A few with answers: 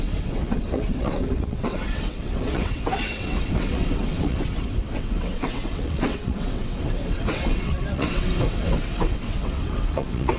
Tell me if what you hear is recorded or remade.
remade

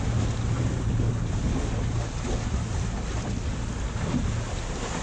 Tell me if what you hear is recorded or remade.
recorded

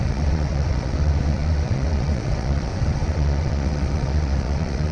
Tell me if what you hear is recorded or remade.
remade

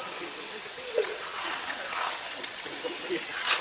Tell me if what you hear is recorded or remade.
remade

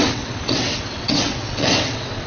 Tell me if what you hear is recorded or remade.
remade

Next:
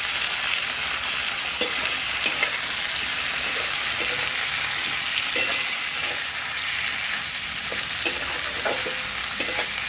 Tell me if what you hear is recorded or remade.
recorded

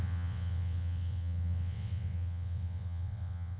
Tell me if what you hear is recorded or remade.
remade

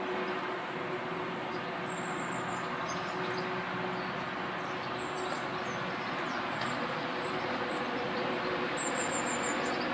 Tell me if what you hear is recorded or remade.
recorded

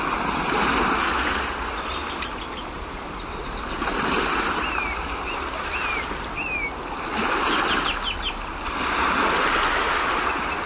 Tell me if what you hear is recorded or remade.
recorded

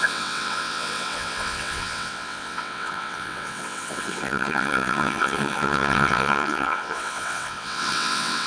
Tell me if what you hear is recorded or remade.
remade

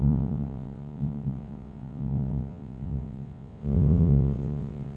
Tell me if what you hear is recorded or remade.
remade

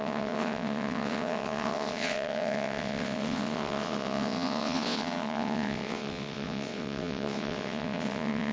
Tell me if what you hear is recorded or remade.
remade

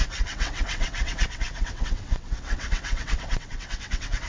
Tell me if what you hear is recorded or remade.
remade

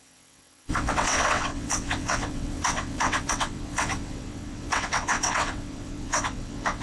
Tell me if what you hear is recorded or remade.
remade